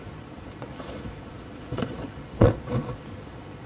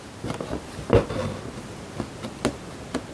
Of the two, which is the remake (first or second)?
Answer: first